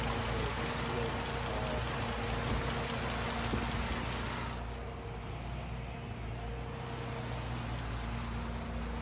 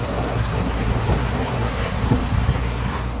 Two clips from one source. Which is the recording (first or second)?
first